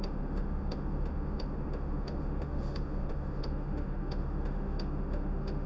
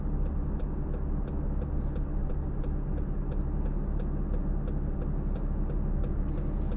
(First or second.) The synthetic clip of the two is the first